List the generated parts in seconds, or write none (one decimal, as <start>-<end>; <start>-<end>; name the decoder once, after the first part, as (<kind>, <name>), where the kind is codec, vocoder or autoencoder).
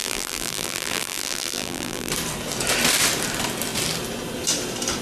0.0-2.1 (vocoder, BigVGAN v2)